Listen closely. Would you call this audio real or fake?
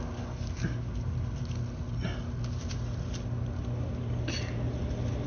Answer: real